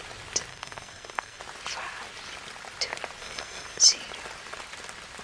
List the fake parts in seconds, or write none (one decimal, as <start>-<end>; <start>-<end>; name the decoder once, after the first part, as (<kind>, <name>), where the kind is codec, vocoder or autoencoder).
0.5-1.4 (codec, SNAC); 3.2-3.8